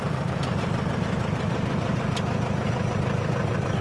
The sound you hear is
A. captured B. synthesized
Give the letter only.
A